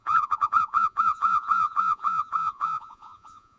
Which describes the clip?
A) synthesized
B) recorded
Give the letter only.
A